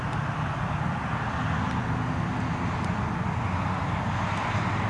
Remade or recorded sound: recorded